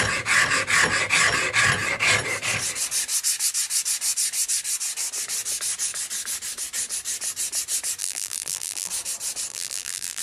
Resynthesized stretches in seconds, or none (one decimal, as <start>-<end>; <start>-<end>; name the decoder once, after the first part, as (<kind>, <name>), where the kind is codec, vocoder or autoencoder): 8.0-8.9 (vocoder, BigVGAN v2); 9.5-10.2